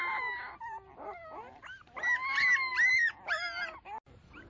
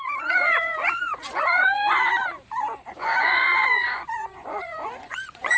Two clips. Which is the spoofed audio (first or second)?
second